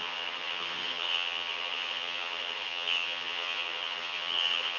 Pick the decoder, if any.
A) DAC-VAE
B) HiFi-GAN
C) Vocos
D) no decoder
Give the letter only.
B